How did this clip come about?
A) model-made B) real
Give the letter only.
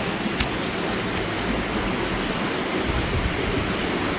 B